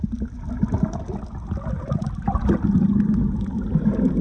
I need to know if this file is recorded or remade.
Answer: recorded